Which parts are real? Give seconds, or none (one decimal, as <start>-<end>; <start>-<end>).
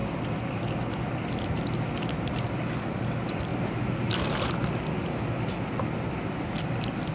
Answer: 0.0-7.1